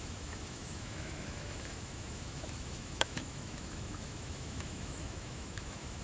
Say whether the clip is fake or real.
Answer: fake